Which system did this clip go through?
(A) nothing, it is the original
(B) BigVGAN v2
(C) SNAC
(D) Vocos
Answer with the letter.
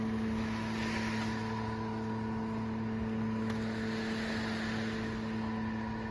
A